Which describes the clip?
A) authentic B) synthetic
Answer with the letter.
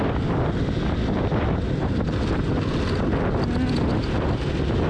A